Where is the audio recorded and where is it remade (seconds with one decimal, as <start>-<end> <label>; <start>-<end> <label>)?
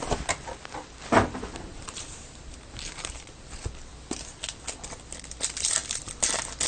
0.0-1.7 recorded; 1.7-3.1 remade; 3.1-6.7 recorded